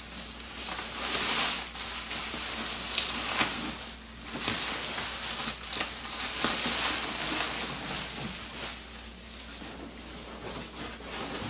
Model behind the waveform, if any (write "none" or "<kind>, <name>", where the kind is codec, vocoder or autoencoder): none